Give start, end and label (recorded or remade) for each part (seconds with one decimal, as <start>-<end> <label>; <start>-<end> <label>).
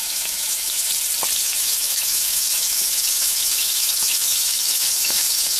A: 0.0-0.9 remade; 0.9-1.4 recorded; 1.4-5.6 remade